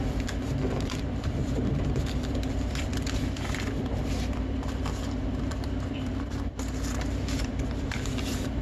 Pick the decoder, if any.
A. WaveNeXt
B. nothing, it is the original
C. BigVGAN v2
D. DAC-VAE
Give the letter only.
C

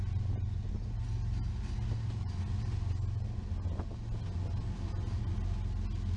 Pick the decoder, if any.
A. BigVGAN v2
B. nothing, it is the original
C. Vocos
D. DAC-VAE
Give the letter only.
B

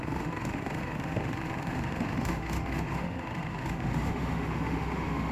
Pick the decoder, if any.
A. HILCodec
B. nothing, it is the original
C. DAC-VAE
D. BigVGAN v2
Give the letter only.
C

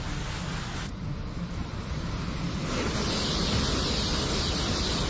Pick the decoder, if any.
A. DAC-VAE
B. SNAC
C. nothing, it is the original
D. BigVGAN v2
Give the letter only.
C